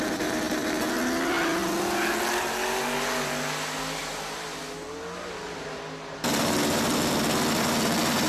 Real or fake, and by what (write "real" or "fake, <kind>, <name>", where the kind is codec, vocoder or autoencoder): real